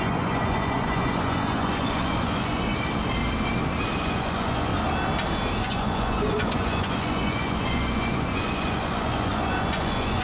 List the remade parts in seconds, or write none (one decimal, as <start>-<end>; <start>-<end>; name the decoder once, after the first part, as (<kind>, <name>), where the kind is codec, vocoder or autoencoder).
0.0-2.7 (vocoder, Vocos); 4.0-4.7; 5.6-10.2